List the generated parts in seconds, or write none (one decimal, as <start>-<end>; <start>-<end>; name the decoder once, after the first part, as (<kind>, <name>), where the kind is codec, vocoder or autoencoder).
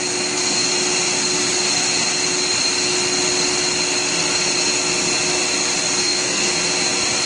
6.0-6.5 (codec, SNAC)